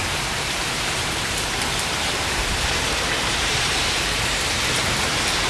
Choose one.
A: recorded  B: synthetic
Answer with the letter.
B